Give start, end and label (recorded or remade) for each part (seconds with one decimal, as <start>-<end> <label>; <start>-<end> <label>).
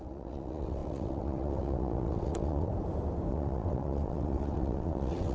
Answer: 0.0-2.7 remade; 2.7-3.3 recorded; 3.3-5.3 remade